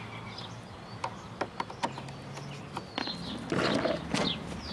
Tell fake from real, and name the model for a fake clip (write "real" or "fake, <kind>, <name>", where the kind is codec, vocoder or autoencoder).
real